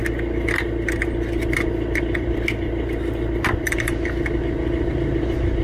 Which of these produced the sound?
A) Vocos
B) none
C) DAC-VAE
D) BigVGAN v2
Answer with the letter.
B